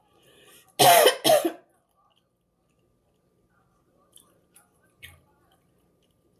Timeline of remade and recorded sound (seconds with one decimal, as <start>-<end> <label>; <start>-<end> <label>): 0.0-3.8 recorded; 3.8-6.4 remade

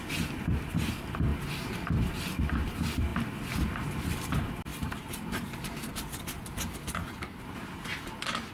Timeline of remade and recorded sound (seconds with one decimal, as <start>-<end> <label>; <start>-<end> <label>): 0.0-4.7 recorded; 4.7-5.9 remade; 5.9-8.5 recorded